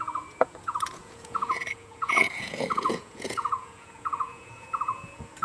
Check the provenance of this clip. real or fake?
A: fake